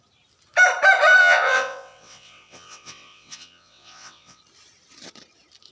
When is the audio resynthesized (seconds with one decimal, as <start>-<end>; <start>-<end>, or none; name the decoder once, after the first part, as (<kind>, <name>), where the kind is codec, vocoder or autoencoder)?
1.2-4.4 (vocoder, WaveNeXt)